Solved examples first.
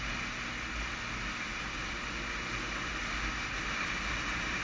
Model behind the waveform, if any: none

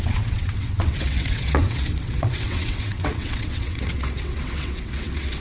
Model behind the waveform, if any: vocoder, WaveNeXt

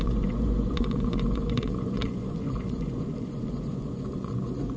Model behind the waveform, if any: vocoder, Vocos